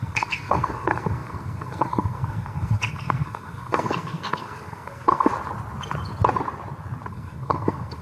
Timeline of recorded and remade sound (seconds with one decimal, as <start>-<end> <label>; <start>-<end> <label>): 0.0-5.3 remade; 5.3-7.1 recorded; 7.1-8.0 remade